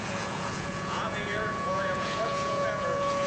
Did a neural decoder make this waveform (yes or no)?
yes